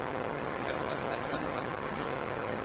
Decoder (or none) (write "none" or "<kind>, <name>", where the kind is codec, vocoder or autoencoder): vocoder, HiFi-GAN